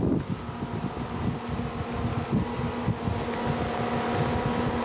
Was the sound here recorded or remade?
recorded